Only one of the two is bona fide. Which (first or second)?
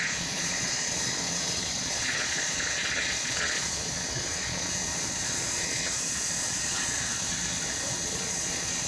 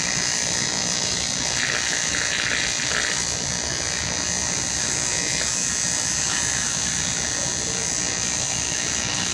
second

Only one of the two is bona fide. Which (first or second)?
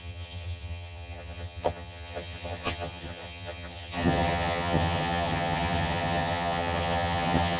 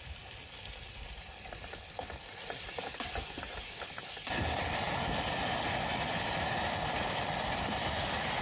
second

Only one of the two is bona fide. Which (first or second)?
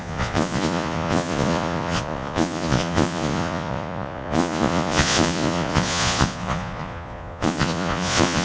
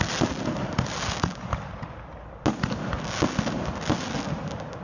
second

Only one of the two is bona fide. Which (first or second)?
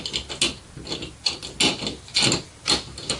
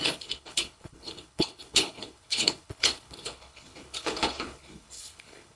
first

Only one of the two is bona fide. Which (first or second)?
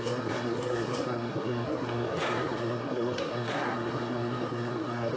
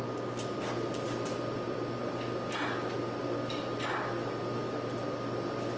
second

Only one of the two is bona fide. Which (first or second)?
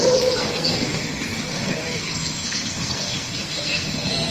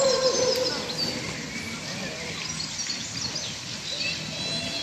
second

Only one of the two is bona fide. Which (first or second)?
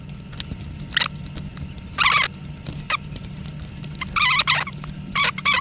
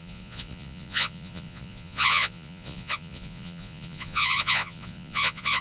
first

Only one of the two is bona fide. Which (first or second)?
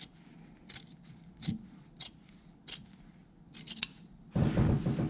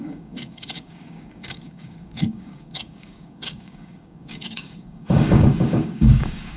first